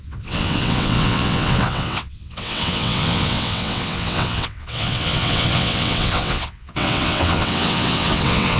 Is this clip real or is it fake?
fake